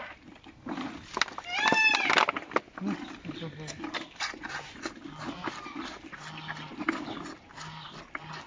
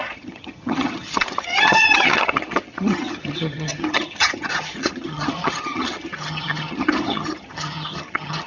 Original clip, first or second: first